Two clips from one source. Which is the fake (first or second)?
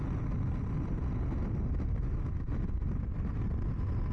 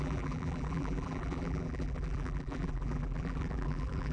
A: second